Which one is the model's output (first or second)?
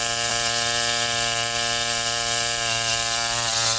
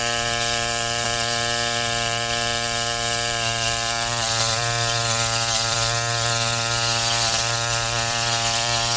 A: second